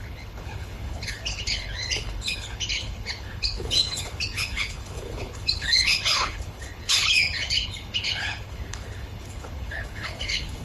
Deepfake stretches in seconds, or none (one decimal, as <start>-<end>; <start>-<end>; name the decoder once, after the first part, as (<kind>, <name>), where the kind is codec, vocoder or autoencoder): 0.0-10.6 (codec, HILCodec)

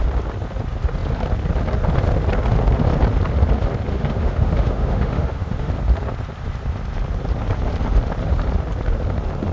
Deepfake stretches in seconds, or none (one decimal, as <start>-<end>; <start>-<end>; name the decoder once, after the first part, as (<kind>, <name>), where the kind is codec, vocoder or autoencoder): 3.9-5.7 (autoencoder, DAC-VAE)

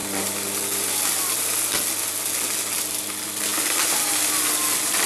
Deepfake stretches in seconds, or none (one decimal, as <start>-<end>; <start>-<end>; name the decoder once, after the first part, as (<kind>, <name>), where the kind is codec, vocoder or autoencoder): none

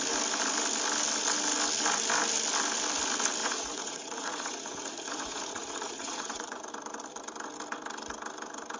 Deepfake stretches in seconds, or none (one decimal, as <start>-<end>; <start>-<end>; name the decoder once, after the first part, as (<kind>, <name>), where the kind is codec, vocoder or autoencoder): 3.4-6.6 (vocoder, Vocos)

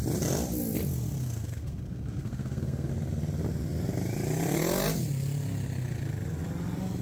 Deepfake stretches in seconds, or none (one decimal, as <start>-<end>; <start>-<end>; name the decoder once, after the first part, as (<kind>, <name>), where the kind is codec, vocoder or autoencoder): 1.2-2.9 (codec, SNAC)

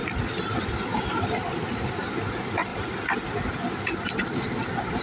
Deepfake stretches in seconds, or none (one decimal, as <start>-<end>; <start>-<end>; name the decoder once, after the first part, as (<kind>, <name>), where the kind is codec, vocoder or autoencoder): 0.0-1.4 (vocoder, BigVGAN v2); 2.7-4.1

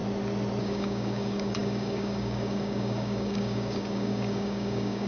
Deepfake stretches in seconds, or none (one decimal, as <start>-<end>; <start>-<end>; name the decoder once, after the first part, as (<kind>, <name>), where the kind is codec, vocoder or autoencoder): 0.6-5.1 (codec, DAC)

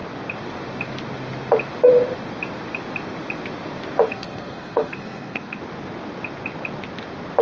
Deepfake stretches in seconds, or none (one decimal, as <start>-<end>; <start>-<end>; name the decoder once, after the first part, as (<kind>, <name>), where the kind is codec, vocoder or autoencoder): 4.1-5.6 (codec, SNAC)